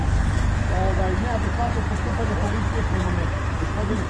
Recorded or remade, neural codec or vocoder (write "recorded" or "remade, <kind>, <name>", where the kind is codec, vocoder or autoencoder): recorded